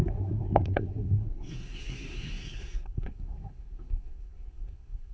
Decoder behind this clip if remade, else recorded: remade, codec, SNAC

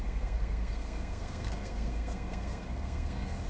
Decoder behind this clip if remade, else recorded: remade, codec, SNAC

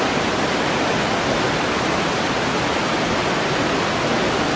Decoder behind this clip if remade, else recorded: recorded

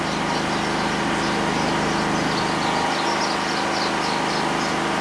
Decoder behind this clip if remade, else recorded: recorded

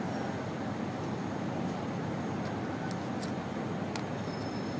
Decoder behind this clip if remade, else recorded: recorded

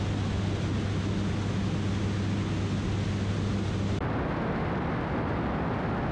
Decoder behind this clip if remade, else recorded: recorded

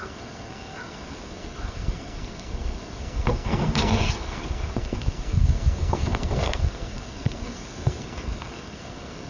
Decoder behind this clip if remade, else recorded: remade, codec, SNAC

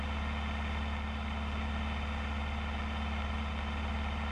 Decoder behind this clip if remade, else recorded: recorded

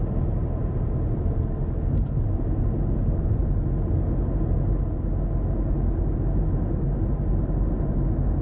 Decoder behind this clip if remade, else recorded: recorded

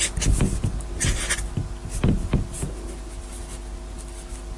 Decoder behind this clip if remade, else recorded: recorded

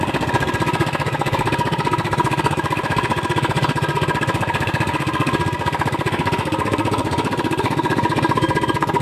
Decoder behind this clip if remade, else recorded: remade, codec, SNAC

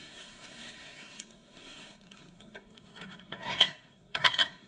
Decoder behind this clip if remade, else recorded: remade, codec, SNAC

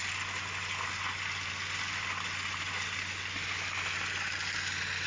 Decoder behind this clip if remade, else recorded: recorded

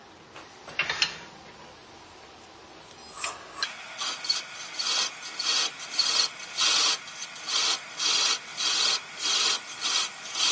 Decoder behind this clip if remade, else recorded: recorded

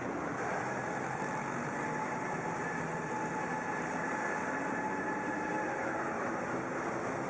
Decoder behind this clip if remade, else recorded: recorded